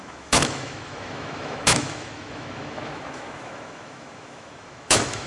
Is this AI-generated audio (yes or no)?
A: yes